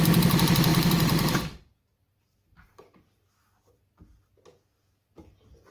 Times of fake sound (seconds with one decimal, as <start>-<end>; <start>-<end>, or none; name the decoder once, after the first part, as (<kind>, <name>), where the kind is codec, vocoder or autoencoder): 0.7-3.3 (vocoder, BigVGAN v2)